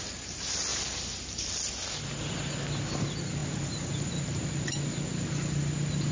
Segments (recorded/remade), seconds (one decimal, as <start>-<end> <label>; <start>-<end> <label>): 0.0-6.1 recorded